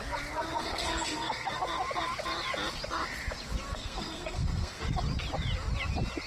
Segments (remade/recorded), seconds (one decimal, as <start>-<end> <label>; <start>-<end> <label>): 0.0-0.6 recorded; 0.6-1.6 remade; 1.6-3.6 recorded; 3.6-4.8 remade; 4.8-6.3 recorded

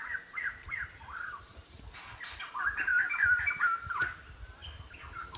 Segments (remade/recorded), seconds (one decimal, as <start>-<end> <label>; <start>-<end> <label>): 0.0-2.9 recorded; 2.9-4.0 remade; 4.0-5.4 recorded